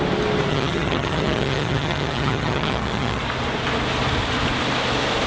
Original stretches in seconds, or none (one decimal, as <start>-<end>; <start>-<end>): 0.0-0.5; 3.2-5.3